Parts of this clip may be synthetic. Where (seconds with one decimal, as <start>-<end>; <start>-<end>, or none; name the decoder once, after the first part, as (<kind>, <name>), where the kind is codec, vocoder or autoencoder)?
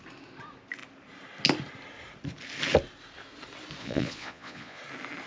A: 3.8-4.8 (vocoder, Vocos)